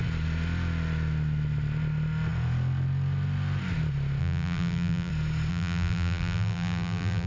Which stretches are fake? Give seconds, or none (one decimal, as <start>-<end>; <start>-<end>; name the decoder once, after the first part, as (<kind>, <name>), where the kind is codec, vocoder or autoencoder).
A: 4.2-5.1 (vocoder, BigVGAN v2); 5.5-7.3